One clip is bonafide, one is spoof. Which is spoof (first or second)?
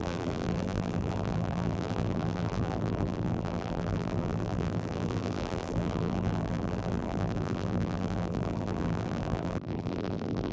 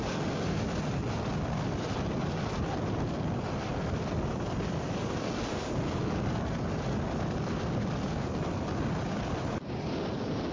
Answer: first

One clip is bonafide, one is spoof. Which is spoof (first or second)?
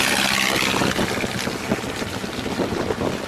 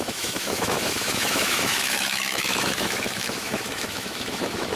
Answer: second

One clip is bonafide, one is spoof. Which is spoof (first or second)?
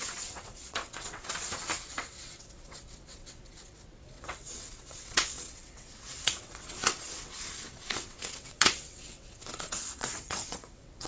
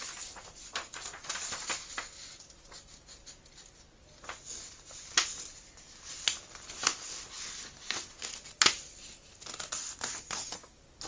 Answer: first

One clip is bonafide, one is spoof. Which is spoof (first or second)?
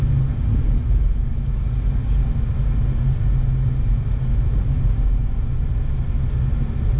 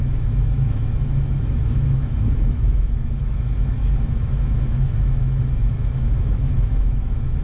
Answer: second